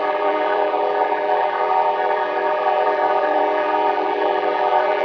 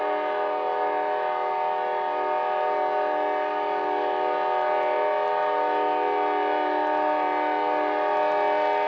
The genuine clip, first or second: second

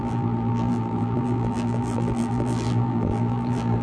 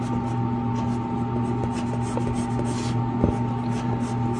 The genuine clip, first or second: second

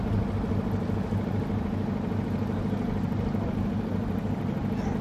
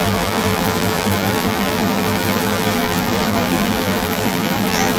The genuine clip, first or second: first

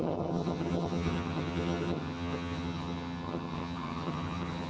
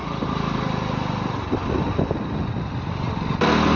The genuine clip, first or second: second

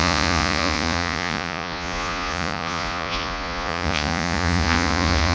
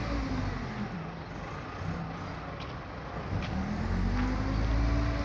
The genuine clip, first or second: second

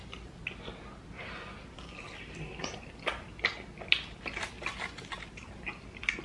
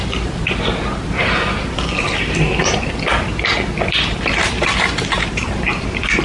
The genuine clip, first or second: first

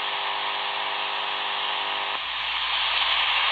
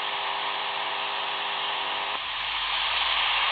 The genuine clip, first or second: first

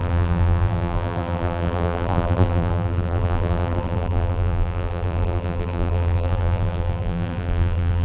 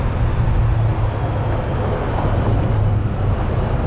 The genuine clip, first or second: second